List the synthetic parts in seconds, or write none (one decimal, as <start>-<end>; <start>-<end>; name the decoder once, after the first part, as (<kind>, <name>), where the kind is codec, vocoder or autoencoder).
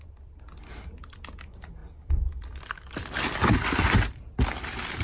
none